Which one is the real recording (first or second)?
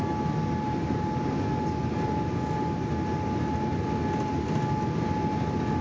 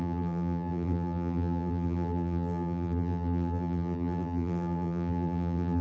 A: first